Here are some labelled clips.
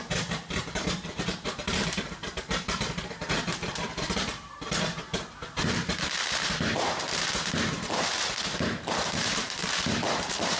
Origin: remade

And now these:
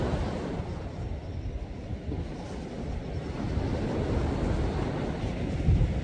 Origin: recorded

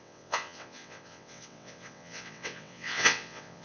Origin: remade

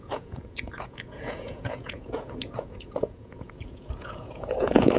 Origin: remade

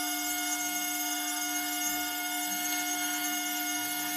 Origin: remade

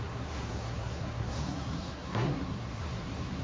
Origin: remade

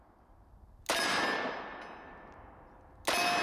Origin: recorded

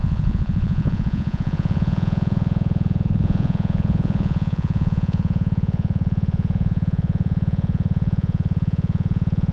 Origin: remade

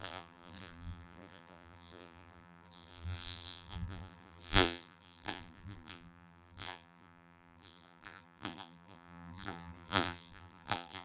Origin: remade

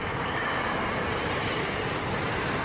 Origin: remade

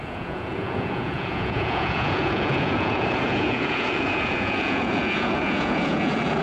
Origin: remade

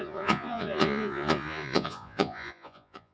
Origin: remade